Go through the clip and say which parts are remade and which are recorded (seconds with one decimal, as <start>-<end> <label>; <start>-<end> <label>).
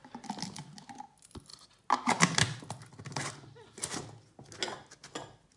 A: 0.0-5.6 recorded